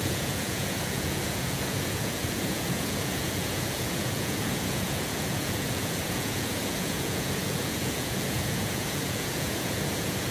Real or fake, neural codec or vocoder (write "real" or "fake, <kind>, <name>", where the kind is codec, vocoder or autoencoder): fake, vocoder, Vocos